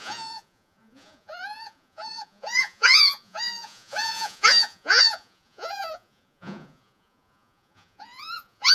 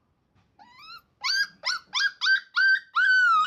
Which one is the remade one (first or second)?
first